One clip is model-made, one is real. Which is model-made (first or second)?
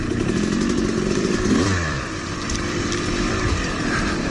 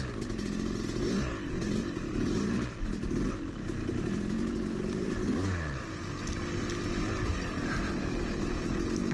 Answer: first